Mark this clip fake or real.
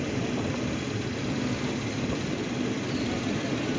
real